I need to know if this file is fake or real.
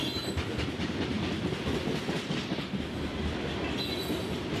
real